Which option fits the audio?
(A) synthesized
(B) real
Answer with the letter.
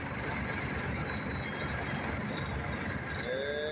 B